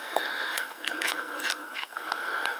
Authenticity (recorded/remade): remade